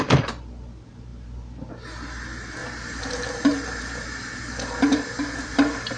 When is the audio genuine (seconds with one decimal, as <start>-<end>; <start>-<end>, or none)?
0.0-2.6